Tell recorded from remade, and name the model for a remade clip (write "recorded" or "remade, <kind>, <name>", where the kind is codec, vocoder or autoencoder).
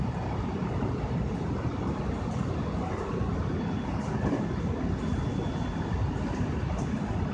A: recorded